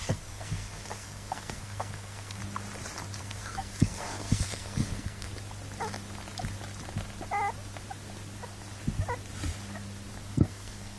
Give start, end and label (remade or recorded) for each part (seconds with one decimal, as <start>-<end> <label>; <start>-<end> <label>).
0.0-2.4 remade; 2.4-3.2 recorded; 3.2-5.3 remade; 5.3-10.3 recorded; 10.3-11.0 remade